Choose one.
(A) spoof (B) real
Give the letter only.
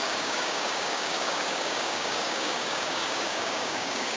A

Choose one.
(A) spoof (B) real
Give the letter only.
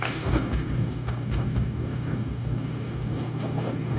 A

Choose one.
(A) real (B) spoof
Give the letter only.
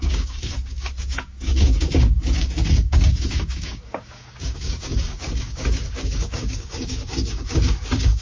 B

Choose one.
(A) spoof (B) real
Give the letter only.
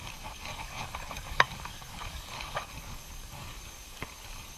A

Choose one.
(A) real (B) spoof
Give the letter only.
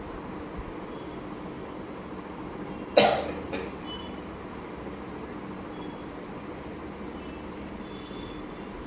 A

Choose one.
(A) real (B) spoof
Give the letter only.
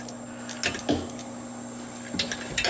A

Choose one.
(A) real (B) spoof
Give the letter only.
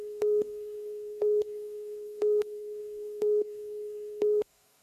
B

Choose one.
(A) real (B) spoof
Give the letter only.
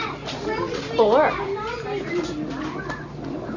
A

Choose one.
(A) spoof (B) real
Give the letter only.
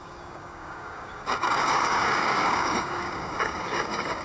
A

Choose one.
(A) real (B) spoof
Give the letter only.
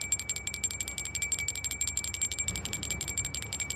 A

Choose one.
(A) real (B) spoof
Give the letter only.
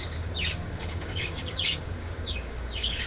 B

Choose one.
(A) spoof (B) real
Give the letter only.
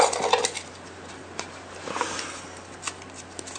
B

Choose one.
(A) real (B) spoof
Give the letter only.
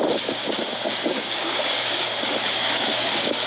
B